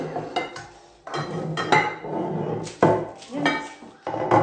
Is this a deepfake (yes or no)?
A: no